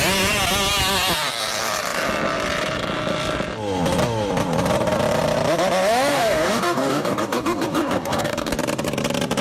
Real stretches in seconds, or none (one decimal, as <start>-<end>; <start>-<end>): 0.0-6.1; 8.5-9.4